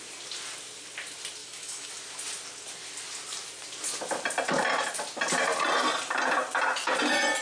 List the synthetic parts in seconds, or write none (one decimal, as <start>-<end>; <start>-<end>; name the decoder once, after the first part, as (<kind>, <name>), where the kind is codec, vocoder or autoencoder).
1.4-1.9 (autoencoder, DAC-VAE)